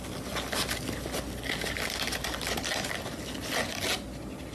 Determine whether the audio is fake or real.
real